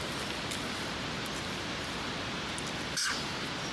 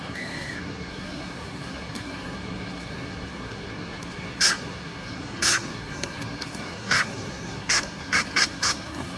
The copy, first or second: second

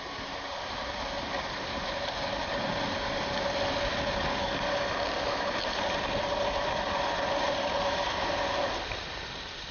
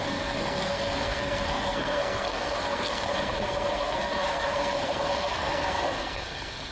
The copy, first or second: second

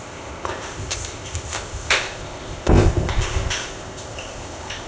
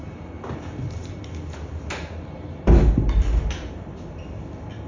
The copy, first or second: first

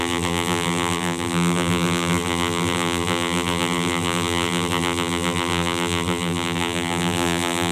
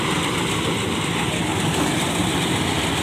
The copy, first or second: first